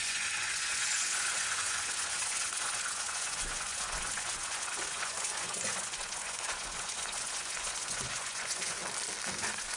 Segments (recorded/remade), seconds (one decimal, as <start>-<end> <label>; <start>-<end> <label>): 0.0-8.8 remade; 8.8-9.3 recorded; 9.3-9.8 remade